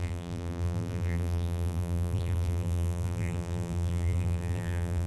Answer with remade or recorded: remade